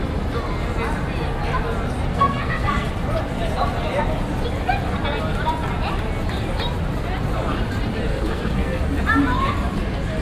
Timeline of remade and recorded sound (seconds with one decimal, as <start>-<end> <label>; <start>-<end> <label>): 0.0-2.1 recorded; 2.1-2.9 remade; 2.9-8.1 recorded; 8.1-8.8 remade; 8.8-10.2 recorded